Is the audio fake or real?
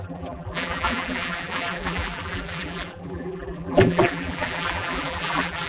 fake